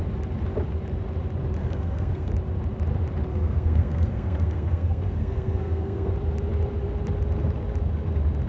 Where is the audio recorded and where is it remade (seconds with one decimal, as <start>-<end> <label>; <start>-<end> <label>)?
0.0-1.6 recorded; 1.6-2.3 remade; 2.3-3.3 recorded; 3.3-6.1 remade; 6.1-8.5 recorded